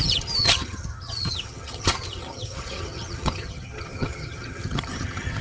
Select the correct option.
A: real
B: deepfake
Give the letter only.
B